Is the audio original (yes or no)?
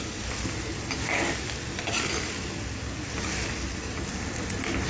yes